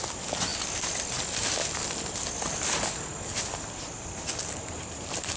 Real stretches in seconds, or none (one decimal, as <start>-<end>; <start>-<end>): 0.0-5.4